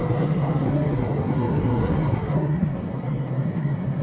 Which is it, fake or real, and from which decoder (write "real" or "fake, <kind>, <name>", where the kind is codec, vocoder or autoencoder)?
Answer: fake, codec, SNAC